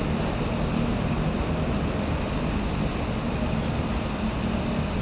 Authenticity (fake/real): real